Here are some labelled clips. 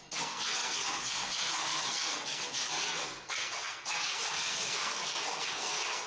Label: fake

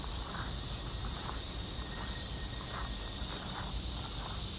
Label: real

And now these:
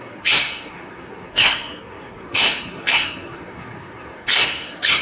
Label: fake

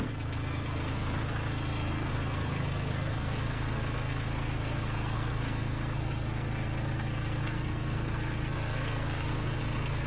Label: fake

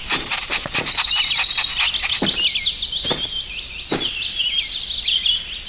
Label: real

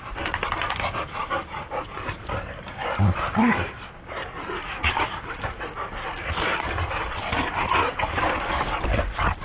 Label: real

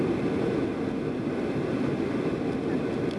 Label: real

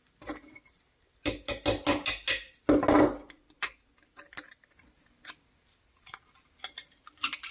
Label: real